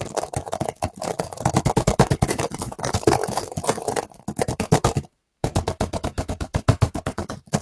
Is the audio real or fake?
fake